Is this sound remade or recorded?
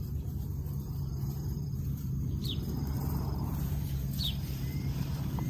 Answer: remade